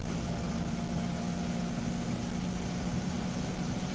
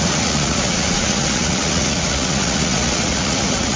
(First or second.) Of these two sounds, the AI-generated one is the second